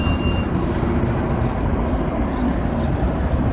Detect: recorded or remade recorded